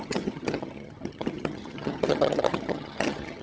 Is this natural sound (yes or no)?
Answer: no